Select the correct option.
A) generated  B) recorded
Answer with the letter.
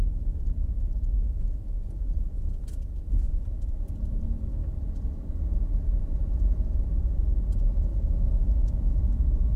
A